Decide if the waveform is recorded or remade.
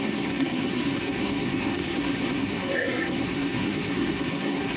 remade